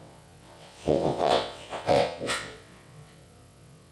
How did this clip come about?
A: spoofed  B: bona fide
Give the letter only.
A